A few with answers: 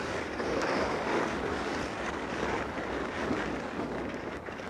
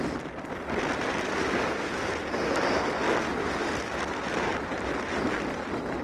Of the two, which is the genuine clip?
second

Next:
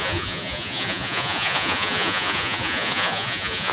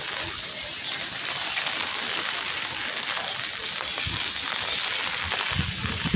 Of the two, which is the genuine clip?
second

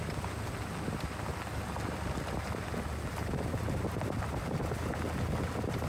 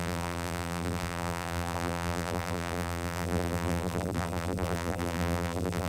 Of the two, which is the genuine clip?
first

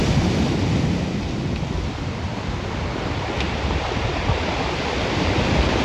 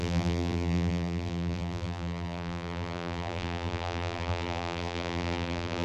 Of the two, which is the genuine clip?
first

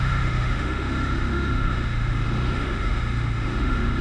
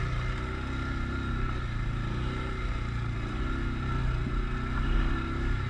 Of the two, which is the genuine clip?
second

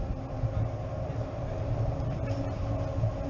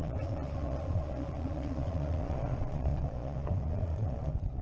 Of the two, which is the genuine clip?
first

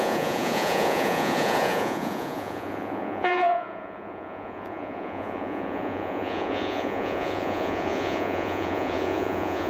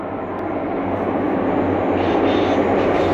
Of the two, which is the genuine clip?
second